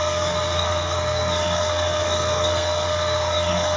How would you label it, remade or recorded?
remade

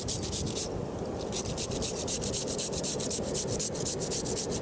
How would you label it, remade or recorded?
recorded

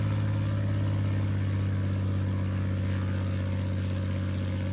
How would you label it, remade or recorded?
recorded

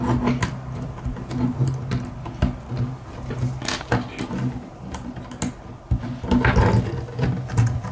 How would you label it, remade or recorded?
recorded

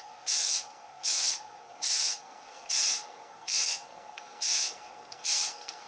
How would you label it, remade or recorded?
remade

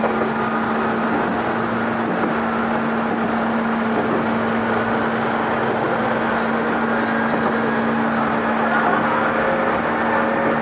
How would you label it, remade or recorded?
recorded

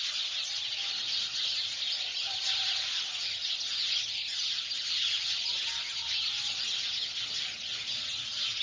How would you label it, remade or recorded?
recorded